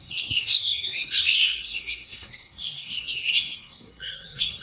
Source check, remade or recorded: remade